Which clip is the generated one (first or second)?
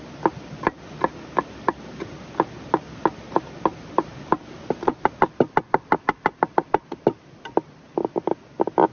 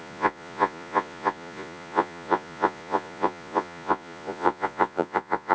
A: second